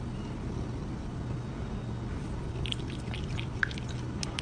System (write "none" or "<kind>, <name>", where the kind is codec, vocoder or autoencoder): none